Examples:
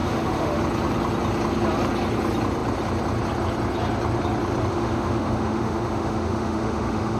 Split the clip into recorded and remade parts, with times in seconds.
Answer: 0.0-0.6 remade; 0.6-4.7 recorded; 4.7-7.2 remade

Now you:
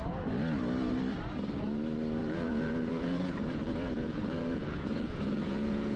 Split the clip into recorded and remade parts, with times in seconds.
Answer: 0.0-2.2 recorded; 2.2-6.0 remade

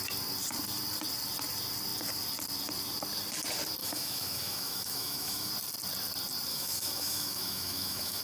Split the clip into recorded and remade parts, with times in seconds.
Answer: 0.0-3.8 recorded; 3.8-5.5 remade; 5.5-6.5 recorded; 6.5-8.2 remade